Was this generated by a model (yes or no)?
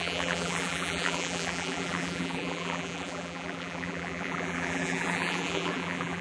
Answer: yes